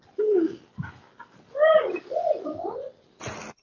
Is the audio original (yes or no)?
yes